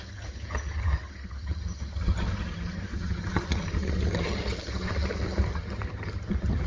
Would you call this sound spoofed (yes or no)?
yes